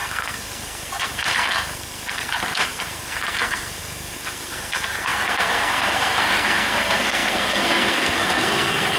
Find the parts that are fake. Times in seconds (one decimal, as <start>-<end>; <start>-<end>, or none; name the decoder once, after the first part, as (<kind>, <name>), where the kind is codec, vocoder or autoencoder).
0.0-9.0 (codec, SNAC)